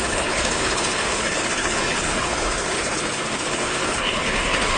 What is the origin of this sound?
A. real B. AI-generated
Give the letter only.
B